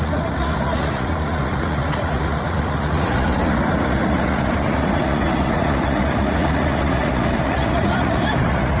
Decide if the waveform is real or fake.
fake